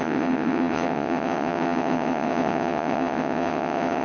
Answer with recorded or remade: remade